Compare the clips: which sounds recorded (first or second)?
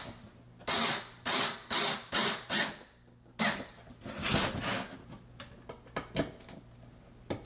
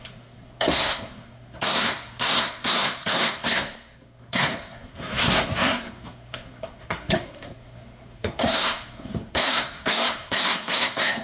first